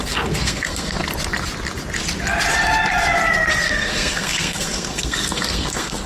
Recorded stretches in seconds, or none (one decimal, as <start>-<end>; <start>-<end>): 1.0-3.5